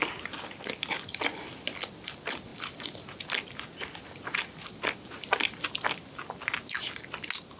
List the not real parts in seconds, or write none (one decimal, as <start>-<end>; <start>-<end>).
none